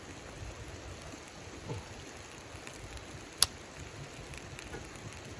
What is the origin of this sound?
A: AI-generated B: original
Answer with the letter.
B